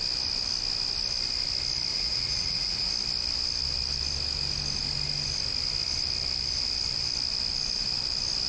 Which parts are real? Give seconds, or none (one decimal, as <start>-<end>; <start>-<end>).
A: 0.0-1.9; 2.9-8.5